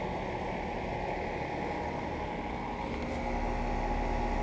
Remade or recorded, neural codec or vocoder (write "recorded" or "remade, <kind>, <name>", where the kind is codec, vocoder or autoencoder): recorded